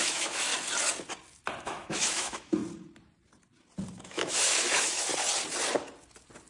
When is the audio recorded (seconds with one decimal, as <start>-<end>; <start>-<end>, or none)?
0.5-1.6; 2.6-4.0; 5.1-6.5